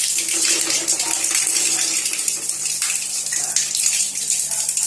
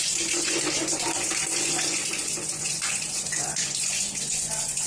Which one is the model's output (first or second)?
second